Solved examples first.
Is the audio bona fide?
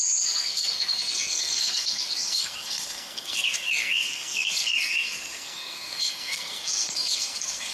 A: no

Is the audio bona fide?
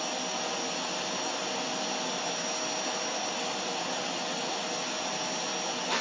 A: yes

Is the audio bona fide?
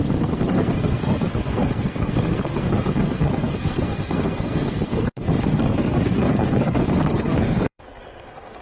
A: no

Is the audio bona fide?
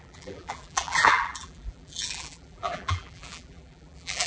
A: no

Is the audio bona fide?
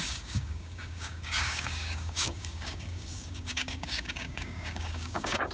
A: no